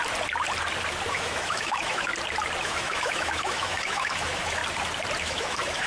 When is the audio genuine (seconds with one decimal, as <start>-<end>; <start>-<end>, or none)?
0.0-1.1; 2.1-2.6; 4.6-5.2